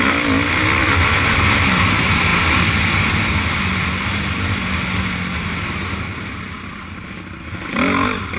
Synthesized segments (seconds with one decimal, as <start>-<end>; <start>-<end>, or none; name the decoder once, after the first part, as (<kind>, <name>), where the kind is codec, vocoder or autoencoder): none